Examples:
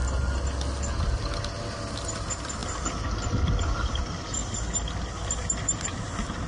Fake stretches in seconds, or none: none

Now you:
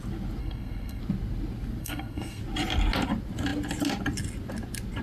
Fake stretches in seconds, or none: 0.4-1.0 (codec, SNAC); 1.8-2.4

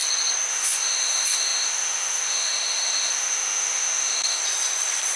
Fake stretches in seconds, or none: 0.5-4.4 (autoencoder, DAC-VAE)

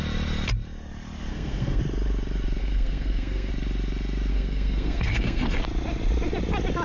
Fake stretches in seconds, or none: 1.3-1.8 (codec, SNAC); 2.6-3.5; 4.3-5.6

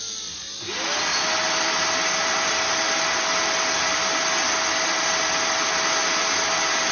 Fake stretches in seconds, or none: none

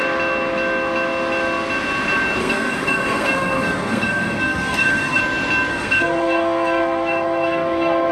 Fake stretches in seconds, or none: 2.4-5.2 (codec, SNAC); 5.7-8.1

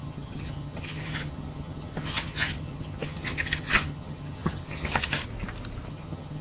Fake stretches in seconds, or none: 0.0-5.2 (vocoder, HiFi-GAN); 5.9-6.4

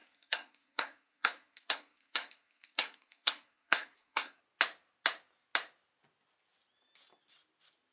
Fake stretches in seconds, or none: 0.0-4.4 (codec, SNAC)